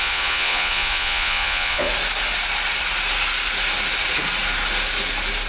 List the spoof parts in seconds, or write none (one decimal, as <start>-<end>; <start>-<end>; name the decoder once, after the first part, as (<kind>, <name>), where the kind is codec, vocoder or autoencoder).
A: 0.0-1.9 (vocoder, Vocos)